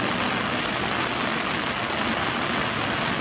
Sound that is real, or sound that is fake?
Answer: real